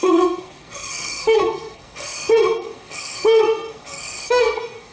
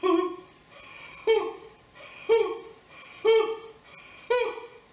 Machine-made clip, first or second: first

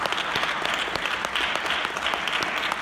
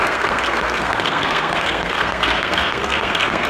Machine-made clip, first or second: second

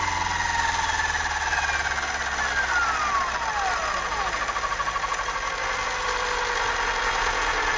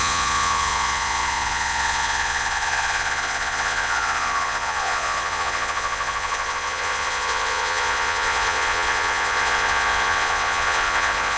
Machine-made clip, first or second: second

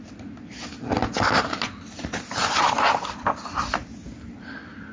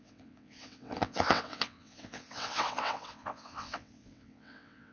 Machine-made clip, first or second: second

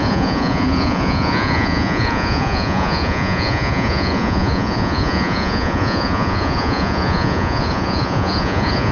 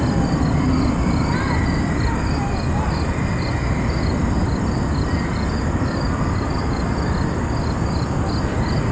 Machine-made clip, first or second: first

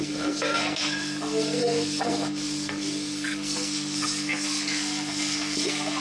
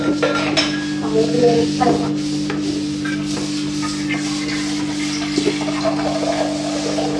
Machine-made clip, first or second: first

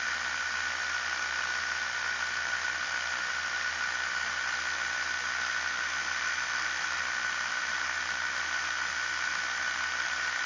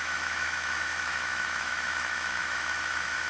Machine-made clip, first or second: second